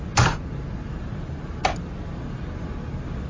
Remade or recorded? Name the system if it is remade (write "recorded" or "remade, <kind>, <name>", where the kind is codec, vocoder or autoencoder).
recorded